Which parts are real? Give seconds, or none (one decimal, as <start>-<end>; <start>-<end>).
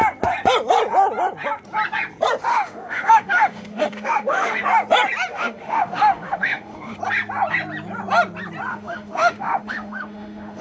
0.0-2.5; 4.6-5.3; 7.0-8.7